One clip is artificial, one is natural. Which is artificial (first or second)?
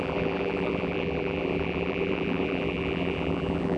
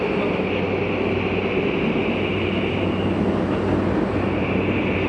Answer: first